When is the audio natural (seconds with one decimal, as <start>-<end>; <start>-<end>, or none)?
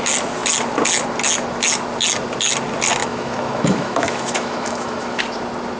0.0-3.0; 5.2-5.8